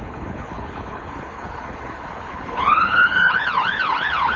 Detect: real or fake fake